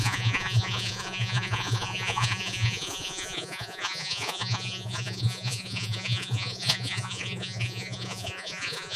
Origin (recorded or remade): remade